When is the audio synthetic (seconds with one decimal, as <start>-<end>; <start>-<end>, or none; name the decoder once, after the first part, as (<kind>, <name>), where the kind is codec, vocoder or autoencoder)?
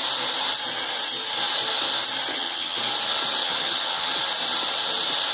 2.3-2.8 (vocoder, HiFi-GAN); 3.4-4.1